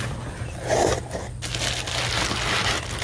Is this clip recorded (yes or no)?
yes